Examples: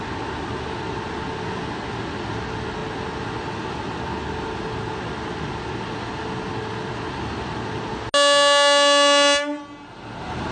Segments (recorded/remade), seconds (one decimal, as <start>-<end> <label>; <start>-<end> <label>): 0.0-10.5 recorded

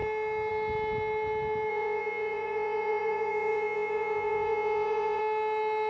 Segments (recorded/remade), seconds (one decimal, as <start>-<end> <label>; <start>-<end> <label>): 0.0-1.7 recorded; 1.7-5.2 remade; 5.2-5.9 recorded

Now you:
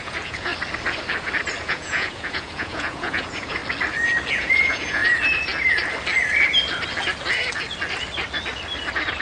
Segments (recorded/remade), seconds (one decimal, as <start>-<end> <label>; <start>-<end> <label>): 0.0-0.5 remade; 0.5-1.6 recorded; 1.6-3.6 remade; 3.6-4.3 recorded; 4.3-5.0 remade; 5.0-9.2 recorded